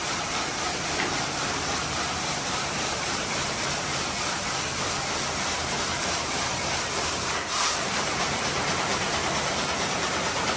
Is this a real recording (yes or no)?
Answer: no